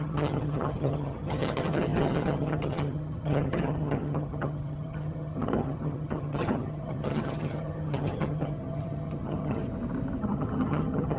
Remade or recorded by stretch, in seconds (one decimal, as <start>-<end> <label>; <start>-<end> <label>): 0.0-9.6 remade; 9.6-10.2 recorded; 10.2-11.2 remade